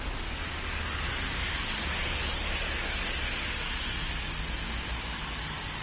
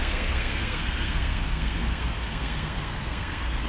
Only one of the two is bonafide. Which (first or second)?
first